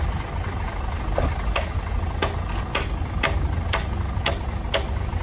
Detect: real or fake real